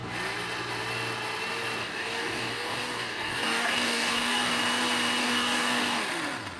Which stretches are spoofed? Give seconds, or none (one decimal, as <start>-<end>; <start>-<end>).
1.8-4.6; 5.2-6.0